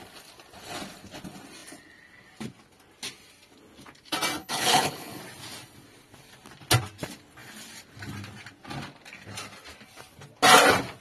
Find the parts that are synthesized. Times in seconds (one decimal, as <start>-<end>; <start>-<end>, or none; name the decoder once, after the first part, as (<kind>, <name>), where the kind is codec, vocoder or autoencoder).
4.4-5.2 (codec, HILCodec)